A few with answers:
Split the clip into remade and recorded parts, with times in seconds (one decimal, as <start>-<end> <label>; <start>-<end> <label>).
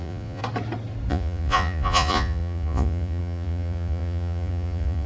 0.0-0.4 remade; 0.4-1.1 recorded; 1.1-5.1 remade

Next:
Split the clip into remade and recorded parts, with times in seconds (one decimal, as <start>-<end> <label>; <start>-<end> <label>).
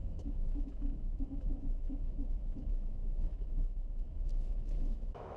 0.0-5.4 remade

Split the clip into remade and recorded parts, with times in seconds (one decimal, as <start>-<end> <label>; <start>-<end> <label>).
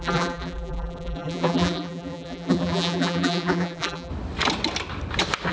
0.0-4.1 remade; 4.1-5.5 recorded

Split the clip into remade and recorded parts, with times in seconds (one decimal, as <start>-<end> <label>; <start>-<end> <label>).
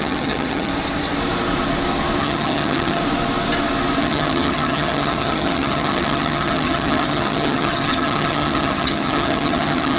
0.0-0.7 remade; 0.7-2.2 recorded; 2.2-3.0 remade; 3.0-4.0 recorded; 4.0-10.0 remade